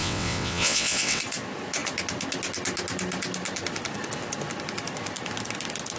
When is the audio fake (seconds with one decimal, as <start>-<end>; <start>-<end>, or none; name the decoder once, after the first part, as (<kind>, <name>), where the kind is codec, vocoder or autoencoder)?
0.0-1.2 (vocoder, WaveNeXt)